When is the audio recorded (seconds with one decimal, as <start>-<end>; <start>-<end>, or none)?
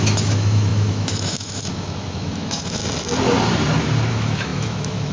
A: 2.8-4.1